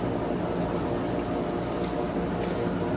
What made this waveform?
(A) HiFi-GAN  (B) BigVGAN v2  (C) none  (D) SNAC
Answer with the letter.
C